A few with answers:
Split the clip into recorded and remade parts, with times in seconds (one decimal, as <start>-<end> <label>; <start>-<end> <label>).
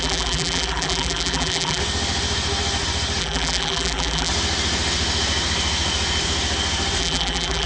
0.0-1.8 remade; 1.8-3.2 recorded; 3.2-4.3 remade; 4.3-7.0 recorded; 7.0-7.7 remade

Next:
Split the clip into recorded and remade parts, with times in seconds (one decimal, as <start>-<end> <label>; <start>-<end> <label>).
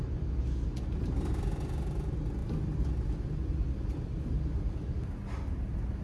0.0-6.0 recorded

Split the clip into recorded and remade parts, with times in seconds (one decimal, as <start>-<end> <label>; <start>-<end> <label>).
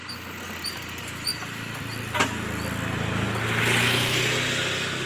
0.0-5.1 recorded